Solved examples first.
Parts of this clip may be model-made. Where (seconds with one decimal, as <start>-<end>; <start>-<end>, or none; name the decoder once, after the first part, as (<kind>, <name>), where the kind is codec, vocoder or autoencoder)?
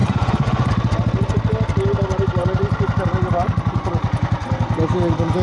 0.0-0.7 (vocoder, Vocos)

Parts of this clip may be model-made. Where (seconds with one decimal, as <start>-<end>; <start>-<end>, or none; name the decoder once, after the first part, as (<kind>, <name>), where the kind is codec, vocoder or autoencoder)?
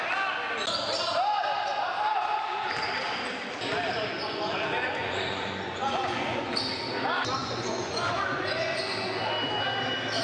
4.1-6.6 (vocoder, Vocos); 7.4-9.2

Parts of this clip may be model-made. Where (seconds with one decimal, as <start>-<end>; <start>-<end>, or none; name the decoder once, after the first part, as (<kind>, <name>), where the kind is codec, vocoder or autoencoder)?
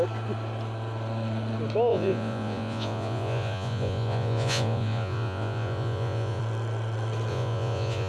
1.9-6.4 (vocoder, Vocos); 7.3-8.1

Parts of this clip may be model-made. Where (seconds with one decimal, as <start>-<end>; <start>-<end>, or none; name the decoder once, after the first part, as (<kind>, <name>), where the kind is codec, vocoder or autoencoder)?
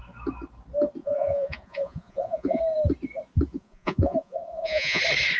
1.0-2.6 (vocoder, Vocos); 3.5-5.0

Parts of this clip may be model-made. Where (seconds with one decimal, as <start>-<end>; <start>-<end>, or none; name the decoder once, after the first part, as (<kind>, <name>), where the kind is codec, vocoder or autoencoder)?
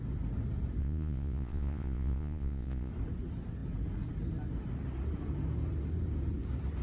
0.8-2.9 (vocoder, Vocos)